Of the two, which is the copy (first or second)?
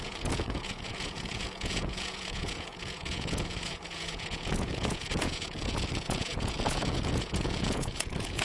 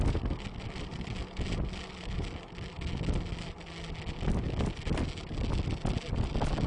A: first